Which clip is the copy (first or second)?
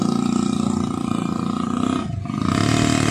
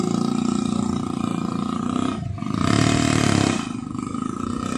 second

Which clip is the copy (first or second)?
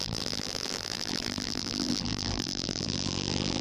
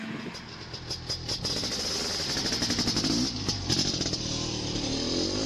first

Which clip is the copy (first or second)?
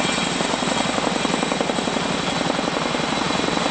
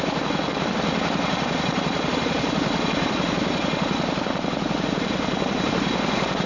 second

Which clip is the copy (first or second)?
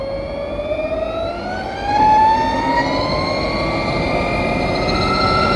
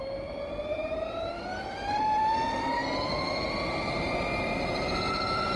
second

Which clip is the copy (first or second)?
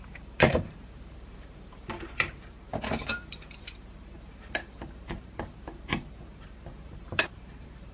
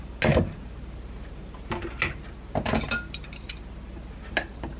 first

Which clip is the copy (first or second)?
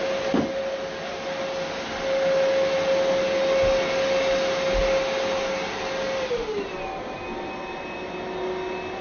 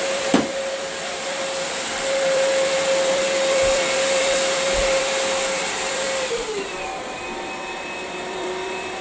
second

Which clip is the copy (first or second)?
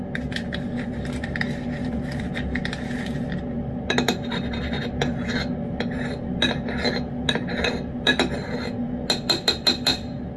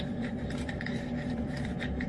second